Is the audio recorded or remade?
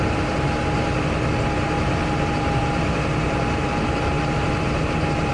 remade